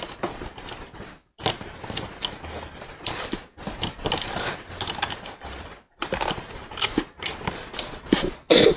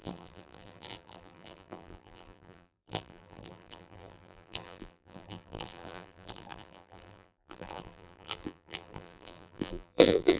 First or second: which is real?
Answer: first